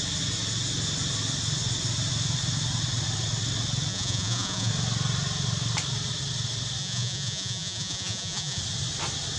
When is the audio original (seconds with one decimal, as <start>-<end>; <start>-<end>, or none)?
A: 0.0-3.9; 4.7-6.8; 8.6-9.4